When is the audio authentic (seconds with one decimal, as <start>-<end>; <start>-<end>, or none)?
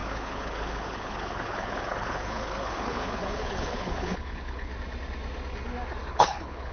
4.7-6.1